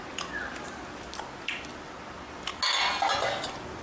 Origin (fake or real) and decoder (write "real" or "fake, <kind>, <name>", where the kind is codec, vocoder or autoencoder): real